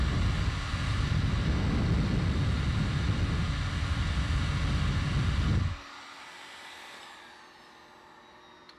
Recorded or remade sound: recorded